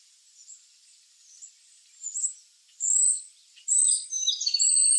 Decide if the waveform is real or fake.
real